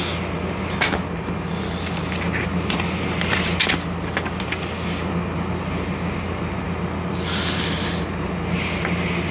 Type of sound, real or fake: real